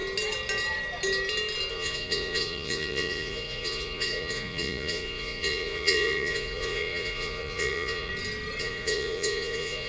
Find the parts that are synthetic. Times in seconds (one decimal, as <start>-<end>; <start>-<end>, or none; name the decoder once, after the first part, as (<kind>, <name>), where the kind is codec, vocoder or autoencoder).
1.7-8.1 (vocoder, Vocos); 8.6-9.9